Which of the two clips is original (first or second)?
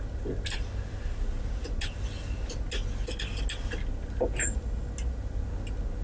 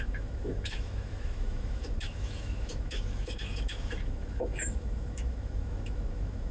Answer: first